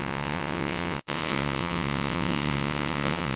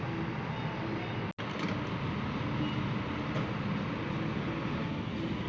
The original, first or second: second